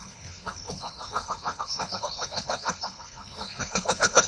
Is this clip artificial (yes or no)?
yes